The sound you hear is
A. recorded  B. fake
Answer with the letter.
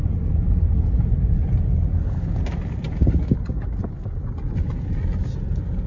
A